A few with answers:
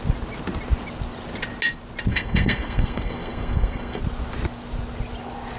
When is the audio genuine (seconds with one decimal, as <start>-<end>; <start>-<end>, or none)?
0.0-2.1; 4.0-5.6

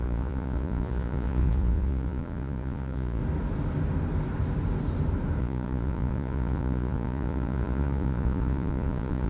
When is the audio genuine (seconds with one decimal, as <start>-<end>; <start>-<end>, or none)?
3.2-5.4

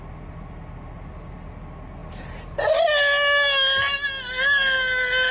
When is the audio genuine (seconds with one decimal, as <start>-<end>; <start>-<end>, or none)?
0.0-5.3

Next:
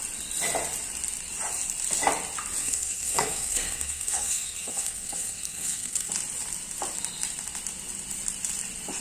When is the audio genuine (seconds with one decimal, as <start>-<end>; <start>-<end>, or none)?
0.0-2.6; 6.1-9.0